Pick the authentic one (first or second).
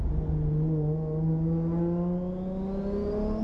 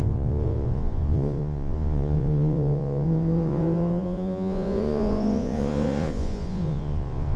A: first